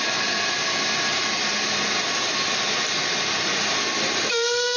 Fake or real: real